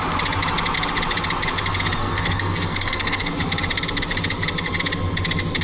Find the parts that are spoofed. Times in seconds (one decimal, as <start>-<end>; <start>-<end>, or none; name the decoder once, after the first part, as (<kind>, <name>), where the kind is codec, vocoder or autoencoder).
2.0-3.3 (codec, SNAC)